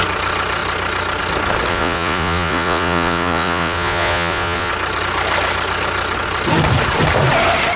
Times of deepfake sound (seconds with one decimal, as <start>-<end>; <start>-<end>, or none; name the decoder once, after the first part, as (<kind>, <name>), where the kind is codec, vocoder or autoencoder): 1.7-4.7 (vocoder, Vocos)